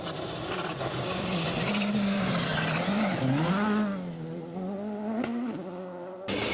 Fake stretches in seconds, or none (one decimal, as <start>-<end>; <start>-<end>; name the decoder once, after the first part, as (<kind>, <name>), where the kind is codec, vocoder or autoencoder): 0.0-2.5 (vocoder, BigVGAN v2)